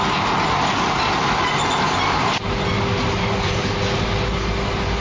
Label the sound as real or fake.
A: real